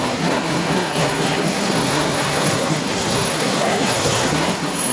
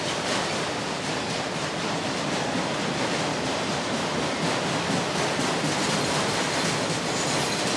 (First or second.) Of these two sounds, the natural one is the second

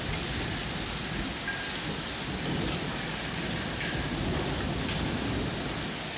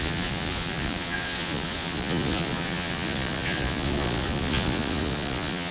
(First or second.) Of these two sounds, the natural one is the first